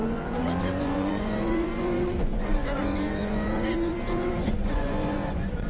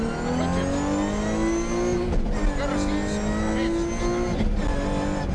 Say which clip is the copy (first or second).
first